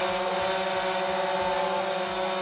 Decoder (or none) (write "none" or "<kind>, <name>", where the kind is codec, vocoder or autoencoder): none